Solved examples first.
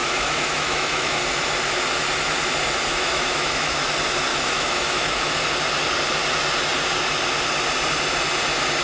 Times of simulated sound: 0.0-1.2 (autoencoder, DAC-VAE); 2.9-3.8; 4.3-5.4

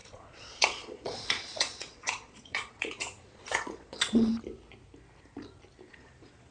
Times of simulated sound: 0.0-4.3 (vocoder, Vocos); 5.9-6.5